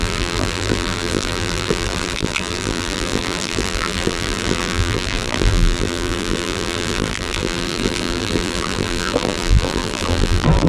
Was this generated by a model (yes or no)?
yes